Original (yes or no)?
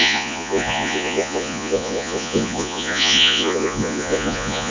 no